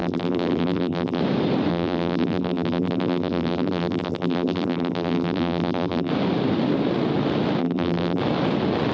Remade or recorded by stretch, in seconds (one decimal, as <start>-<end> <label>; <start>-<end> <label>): 0.0-1.2 remade; 1.2-1.7 recorded; 1.7-6.1 remade; 6.1-7.6 recorded; 7.6-8.2 remade; 8.2-8.9 recorded